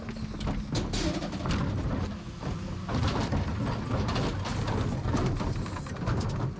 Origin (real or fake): real